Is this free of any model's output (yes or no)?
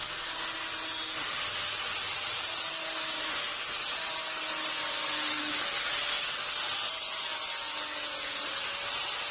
yes